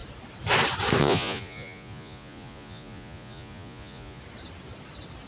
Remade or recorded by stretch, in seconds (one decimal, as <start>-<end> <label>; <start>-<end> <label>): 0.0-1.0 recorded; 1.0-4.2 remade; 4.2-5.3 recorded